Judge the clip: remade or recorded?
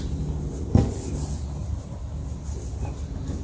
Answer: recorded